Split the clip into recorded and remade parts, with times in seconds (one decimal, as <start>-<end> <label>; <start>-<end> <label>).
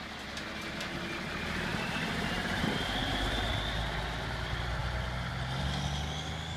0.0-1.7 recorded; 1.7-2.6 remade; 2.6-3.0 recorded; 3.0-3.5 remade; 3.5-6.6 recorded